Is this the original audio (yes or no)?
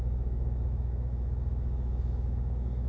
no